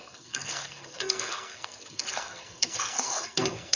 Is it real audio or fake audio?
fake